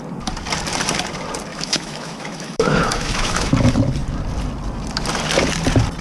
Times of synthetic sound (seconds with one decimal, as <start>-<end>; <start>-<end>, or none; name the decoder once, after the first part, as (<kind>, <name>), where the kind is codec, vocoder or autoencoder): 1.5-3.5 (autoencoder, DAC-VAE)